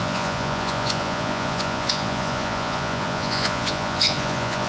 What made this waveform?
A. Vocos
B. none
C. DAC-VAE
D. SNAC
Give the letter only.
A